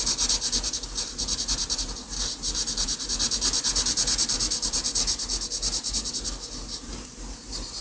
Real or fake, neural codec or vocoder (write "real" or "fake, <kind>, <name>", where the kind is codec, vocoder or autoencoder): fake, vocoder, BigVGAN v2